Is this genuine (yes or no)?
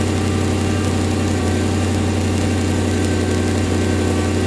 yes